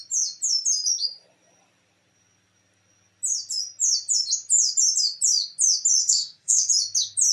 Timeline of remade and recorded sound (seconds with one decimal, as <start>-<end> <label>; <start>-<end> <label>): 0.0-6.0 recorded; 6.0-6.7 remade; 6.7-7.3 recorded